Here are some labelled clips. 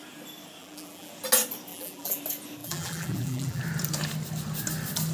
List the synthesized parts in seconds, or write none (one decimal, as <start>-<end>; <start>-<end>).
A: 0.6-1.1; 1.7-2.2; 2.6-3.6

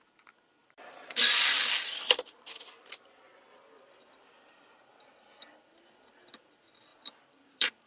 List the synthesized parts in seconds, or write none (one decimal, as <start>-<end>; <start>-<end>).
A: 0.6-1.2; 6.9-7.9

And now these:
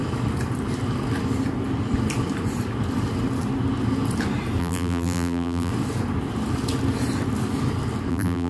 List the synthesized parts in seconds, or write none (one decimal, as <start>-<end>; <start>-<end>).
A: 4.6-5.7; 8.1-8.5

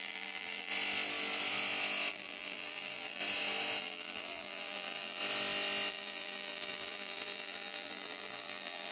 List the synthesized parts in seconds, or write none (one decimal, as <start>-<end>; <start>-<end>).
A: 0.0-0.7; 2.1-3.2; 3.8-5.2; 5.9-8.9

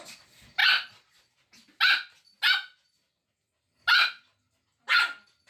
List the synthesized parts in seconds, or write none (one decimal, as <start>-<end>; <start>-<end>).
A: none